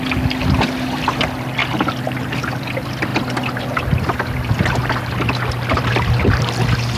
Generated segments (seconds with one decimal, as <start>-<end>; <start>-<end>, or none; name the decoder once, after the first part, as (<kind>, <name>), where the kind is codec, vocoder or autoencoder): 0.0-1.6 (vocoder, BigVGAN v2); 2.2-3.1; 3.7-7.0